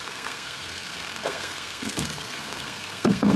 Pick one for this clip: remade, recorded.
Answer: remade